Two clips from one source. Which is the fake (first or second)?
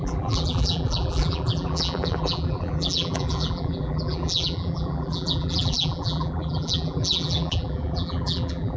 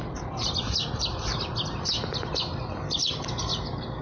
first